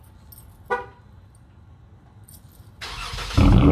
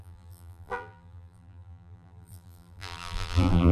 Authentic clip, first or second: first